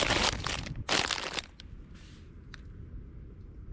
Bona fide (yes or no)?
yes